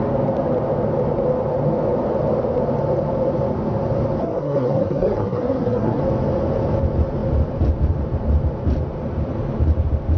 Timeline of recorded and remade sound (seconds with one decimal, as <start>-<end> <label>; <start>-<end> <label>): 0.0-4.2 recorded; 4.2-6.0 remade; 6.0-10.2 recorded